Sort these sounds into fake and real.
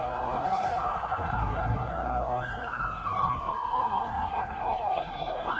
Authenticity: fake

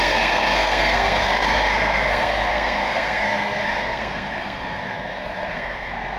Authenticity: fake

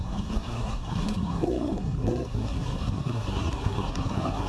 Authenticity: fake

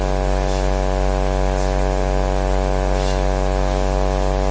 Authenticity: real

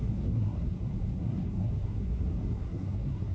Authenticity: fake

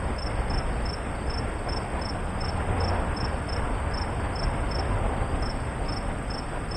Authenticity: real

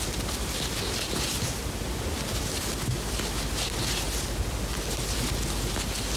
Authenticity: real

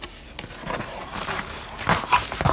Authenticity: real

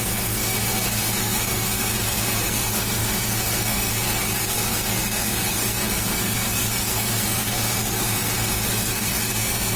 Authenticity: fake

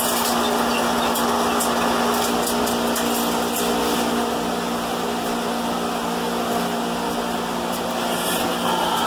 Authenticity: real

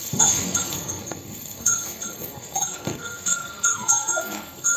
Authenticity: fake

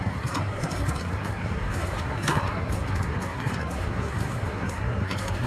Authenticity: fake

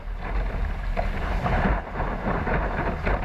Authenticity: real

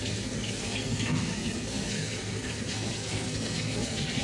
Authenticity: fake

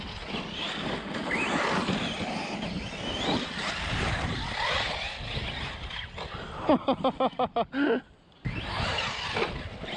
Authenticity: real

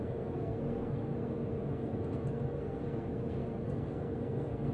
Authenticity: fake